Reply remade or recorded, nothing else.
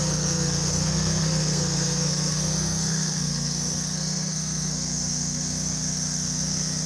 remade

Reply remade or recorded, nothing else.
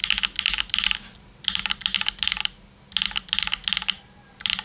recorded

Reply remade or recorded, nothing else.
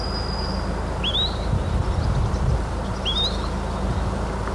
recorded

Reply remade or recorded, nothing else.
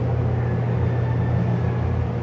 recorded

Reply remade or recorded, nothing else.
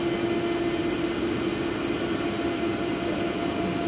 recorded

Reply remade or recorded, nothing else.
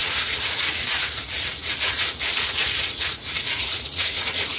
remade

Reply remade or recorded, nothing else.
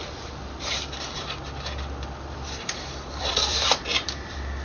remade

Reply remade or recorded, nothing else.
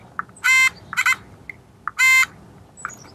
recorded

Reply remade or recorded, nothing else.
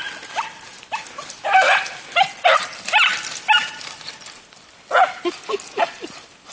recorded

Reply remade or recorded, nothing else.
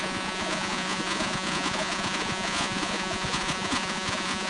remade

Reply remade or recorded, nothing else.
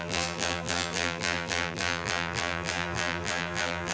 remade